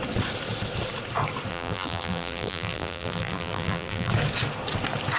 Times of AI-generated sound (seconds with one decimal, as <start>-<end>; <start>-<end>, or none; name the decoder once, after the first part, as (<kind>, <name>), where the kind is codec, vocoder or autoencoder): 1.5-4.1 (vocoder, BigVGAN v2)